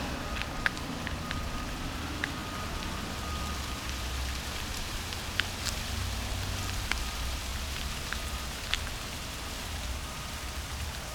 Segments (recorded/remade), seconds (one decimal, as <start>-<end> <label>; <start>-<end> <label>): 0.0-11.1 recorded